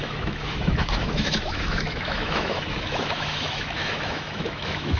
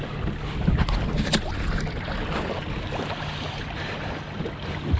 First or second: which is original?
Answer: second